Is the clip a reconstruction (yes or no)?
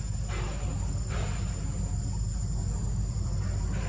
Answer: no